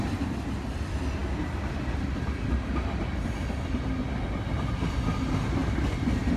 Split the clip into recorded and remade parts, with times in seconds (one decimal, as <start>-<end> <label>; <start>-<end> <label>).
0.0-6.4 recorded